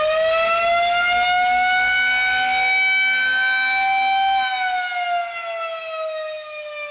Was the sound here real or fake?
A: real